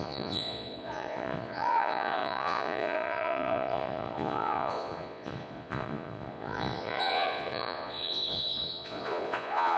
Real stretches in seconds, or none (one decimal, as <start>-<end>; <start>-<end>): none

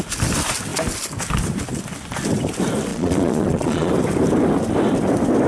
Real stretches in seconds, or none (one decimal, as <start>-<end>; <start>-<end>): 0.0-2.9; 3.9-5.5

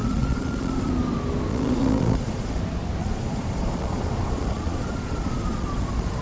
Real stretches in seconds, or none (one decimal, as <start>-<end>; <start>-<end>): 0.9-1.5; 2.6-3.0

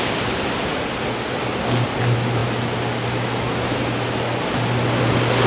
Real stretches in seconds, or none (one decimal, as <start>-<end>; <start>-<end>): 0.0-5.5